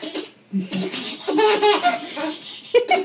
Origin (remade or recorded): recorded